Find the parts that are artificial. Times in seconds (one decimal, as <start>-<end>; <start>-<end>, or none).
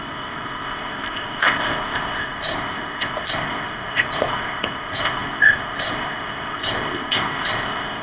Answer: 0.0-8.0